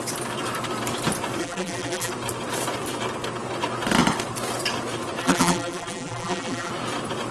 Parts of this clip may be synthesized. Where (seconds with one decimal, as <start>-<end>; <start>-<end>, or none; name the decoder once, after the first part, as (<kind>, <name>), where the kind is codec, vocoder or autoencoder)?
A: 1.4-2.1 (vocoder, BigVGAN v2); 5.2-6.7